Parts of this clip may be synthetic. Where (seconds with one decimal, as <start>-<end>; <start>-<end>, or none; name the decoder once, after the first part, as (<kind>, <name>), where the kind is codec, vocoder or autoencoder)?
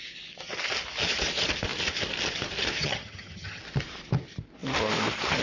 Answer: 2.8-3.6 (vocoder, HiFi-GAN)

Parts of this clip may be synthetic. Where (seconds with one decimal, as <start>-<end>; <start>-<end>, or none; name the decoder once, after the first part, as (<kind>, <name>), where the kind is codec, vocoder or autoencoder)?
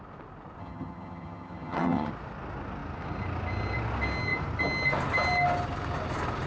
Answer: 0.6-2.1 (vocoder, HiFi-GAN)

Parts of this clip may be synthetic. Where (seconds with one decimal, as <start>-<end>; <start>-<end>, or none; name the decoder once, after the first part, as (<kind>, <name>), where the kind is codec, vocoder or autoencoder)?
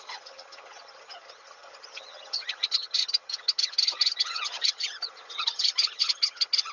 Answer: 0.0-6.7 (vocoder, HiFi-GAN)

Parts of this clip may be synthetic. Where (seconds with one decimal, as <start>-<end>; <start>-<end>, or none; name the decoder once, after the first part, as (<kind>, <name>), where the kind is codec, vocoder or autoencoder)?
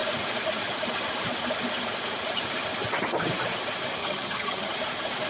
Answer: 4.0-4.7 (vocoder, HiFi-GAN)